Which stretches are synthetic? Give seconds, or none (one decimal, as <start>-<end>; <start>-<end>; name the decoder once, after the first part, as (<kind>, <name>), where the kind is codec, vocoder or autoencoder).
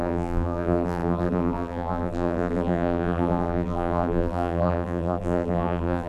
0.0-6.1 (vocoder, BigVGAN v2)